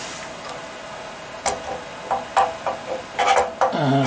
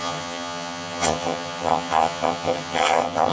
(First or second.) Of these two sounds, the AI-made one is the second